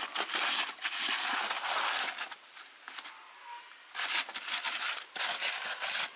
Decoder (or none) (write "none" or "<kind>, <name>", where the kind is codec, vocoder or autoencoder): none